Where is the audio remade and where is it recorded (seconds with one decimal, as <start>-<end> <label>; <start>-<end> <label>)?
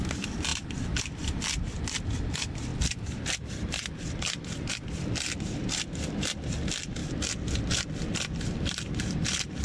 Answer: 0.0-7.0 remade; 7.0-8.1 recorded; 8.1-9.6 remade